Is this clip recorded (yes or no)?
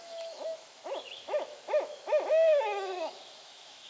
no